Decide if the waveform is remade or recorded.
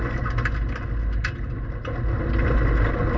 recorded